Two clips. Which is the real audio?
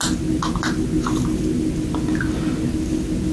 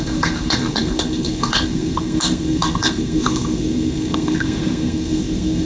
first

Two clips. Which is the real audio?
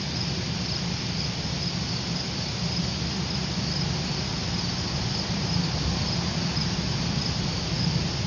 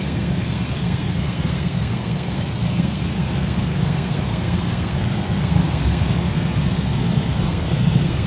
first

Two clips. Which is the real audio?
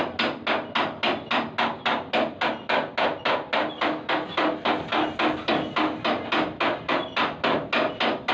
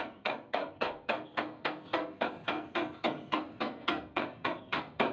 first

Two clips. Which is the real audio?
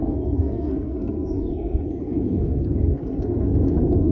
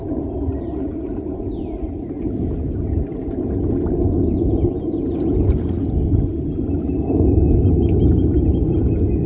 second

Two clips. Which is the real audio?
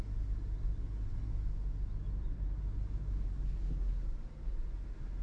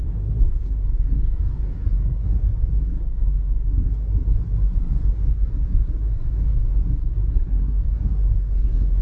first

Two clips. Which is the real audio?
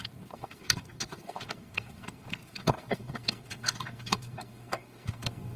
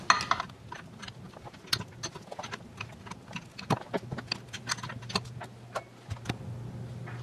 second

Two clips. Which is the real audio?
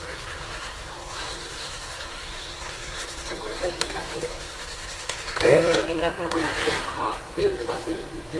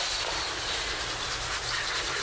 second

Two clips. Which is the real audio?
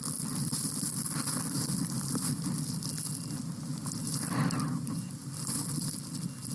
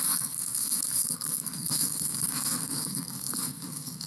first